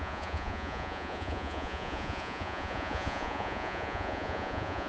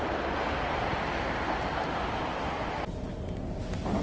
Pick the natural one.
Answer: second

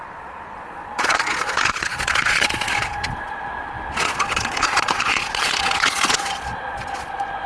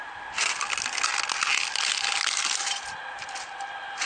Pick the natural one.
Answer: second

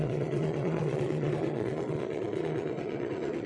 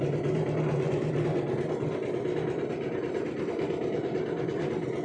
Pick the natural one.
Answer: second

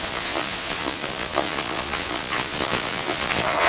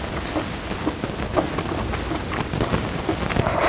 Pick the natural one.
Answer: second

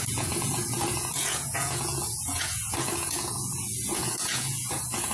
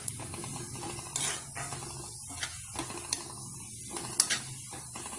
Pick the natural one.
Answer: second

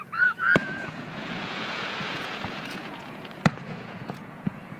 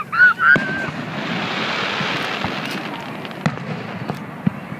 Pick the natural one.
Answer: second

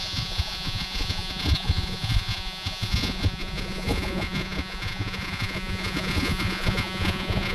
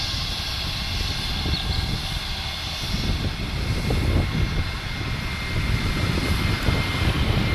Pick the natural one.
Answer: second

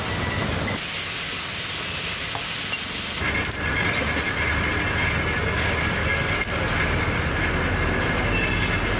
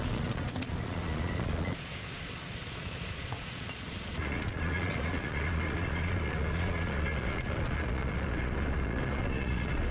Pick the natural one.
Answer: first